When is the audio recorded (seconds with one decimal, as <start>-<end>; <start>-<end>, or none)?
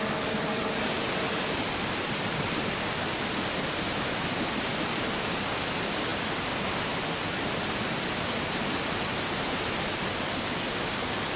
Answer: none